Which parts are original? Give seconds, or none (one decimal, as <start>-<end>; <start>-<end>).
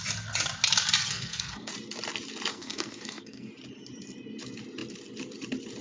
0.0-1.0; 1.7-2.5; 3.5-5.8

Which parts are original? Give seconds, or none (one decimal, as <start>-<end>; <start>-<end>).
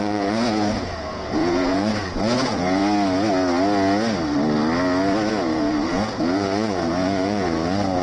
2.8-5.3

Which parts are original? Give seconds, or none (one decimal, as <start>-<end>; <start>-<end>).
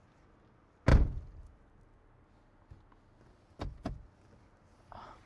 0.0-5.3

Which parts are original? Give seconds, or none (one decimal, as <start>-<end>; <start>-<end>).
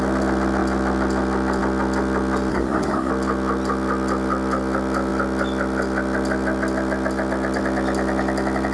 0.0-2.5; 3.1-8.7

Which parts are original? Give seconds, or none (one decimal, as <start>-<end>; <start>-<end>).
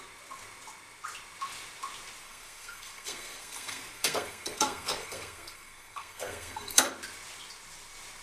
0.0-2.2; 6.8-8.2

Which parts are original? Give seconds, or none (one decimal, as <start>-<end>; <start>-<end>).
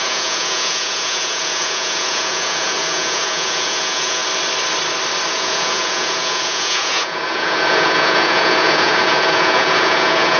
4.2-5.3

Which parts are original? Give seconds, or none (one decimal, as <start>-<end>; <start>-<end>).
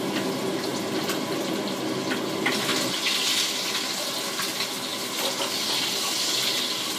0.0-7.0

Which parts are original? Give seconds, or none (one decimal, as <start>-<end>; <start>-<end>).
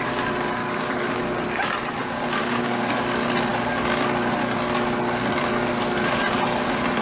0.0-0.6; 1.2-2.4; 2.9-7.0